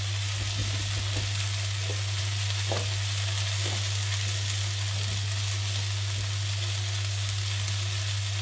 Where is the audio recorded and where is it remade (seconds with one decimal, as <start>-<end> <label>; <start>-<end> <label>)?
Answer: 0.0-8.4 recorded